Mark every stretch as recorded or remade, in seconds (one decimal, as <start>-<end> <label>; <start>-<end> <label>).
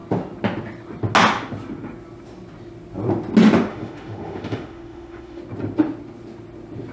0.0-3.7 recorded; 3.7-5.4 remade; 5.4-6.9 recorded